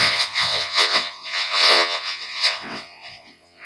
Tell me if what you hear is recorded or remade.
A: remade